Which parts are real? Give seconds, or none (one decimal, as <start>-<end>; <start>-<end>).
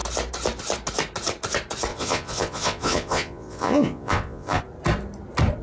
0.0-1.9; 4.6-5.6